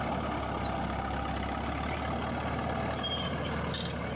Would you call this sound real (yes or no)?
yes